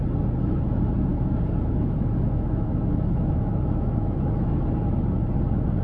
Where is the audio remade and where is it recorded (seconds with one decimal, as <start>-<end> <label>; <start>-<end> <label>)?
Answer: 0.0-1.1 recorded; 1.1-4.6 remade; 4.6-5.8 recorded